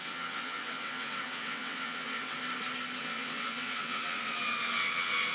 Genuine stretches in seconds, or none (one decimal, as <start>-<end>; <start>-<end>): 2.4-3.0

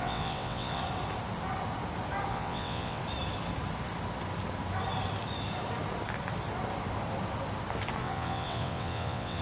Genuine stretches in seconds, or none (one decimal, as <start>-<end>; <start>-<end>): 0.8-2.3; 3.0-8.0

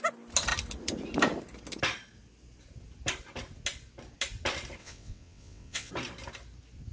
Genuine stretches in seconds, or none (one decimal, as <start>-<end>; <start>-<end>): 0.0-4.8; 5.9-6.9

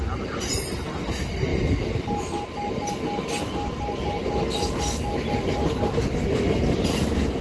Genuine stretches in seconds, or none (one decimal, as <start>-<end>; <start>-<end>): 0.0-7.4

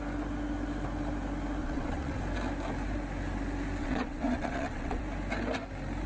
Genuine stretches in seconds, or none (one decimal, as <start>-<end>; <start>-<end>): 0.0-1.6; 2.2-3.8; 5.0-6.1

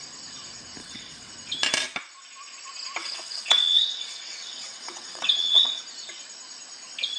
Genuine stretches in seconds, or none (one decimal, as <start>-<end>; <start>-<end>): 0.0-0.8; 1.3-3.0; 5.8-7.2

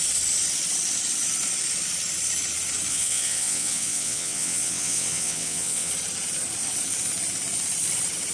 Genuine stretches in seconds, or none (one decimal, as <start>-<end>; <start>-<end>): 0.0-2.9; 5.9-8.3

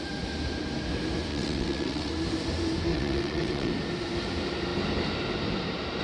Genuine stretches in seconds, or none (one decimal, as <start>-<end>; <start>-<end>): 0.0-1.3; 2.1-2.9; 3.7-6.0